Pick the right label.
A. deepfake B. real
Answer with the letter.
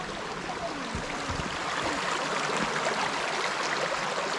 B